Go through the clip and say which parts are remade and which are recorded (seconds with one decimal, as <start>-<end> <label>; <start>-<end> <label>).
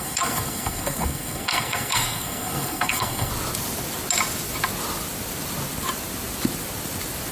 0.0-3.3 remade; 3.3-7.3 recorded